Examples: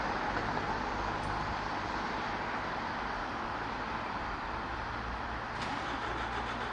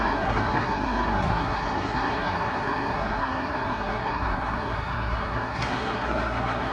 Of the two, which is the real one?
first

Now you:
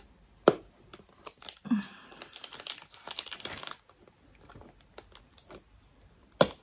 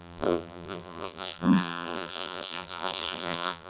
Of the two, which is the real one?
first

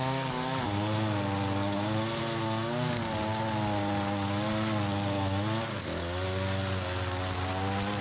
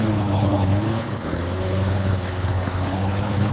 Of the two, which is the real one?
first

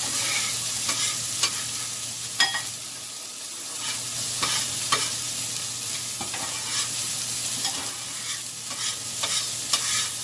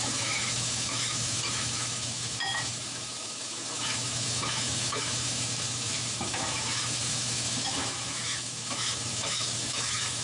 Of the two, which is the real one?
first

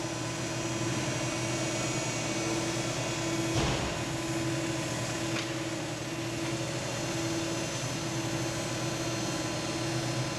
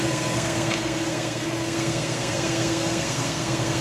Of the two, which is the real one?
first